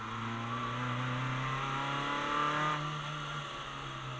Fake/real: real